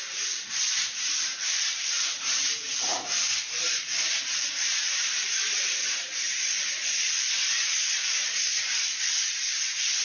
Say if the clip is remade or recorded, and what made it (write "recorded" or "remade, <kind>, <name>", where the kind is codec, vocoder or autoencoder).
remade, vocoder, BigVGAN v2